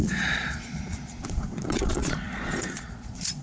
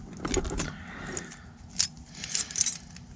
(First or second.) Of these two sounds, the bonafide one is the second